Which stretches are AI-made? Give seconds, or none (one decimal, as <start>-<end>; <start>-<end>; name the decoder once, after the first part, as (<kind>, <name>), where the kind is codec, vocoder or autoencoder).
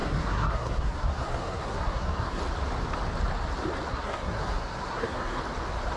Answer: 0.0-2.4 (codec, SNAC); 3.9-5.4